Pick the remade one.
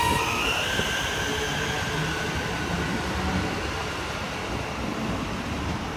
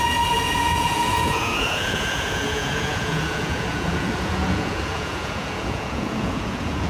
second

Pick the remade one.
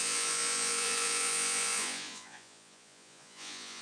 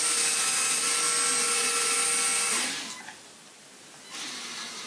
first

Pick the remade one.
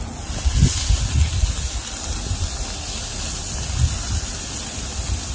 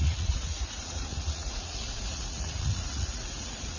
second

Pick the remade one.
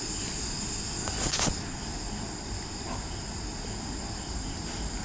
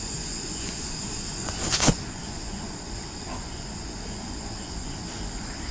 second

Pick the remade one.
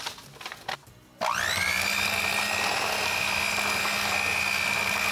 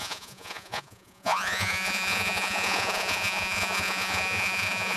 second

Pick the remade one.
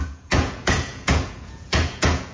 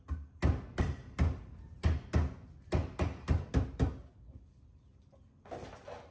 first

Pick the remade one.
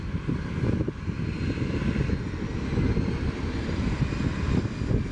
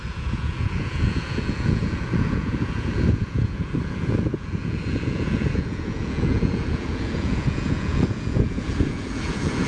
second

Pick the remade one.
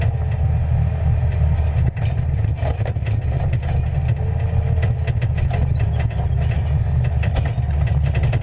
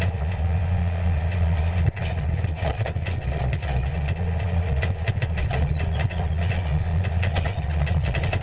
second